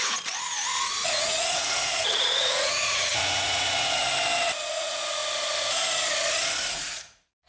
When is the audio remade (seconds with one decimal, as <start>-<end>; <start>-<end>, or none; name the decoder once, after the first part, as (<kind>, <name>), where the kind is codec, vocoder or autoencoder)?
0.0-4.0 (vocoder, Vocos); 4.7-5.2; 6.7-7.5